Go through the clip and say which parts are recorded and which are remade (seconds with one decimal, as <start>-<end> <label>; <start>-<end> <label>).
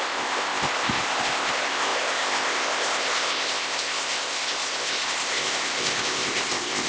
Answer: 0.0-6.9 remade